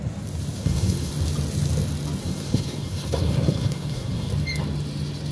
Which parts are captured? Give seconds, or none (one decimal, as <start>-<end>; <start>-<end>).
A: 0.0-0.6; 1.1-2.2; 4.3-5.3